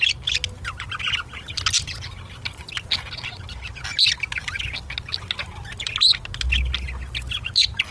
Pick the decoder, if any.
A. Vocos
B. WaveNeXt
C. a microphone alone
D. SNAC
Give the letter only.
C